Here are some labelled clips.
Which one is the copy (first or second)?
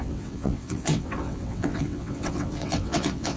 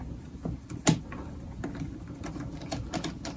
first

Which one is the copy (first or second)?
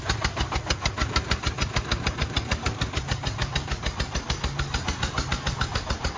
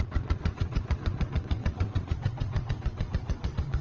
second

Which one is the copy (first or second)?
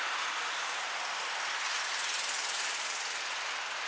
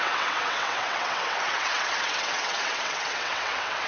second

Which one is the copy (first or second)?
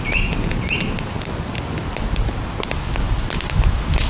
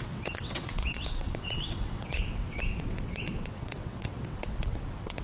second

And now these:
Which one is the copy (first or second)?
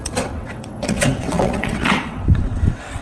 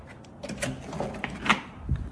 first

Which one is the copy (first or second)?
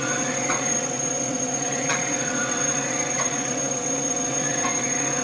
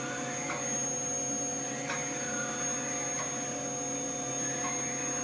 first